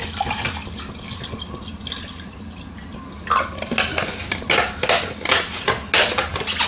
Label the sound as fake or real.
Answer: real